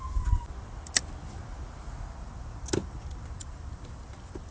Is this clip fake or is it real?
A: fake